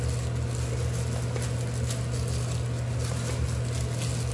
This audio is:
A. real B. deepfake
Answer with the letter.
A